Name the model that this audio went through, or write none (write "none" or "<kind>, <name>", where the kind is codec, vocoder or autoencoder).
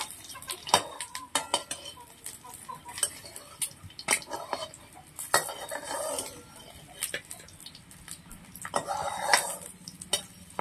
none